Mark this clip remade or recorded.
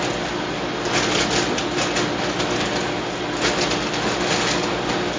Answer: recorded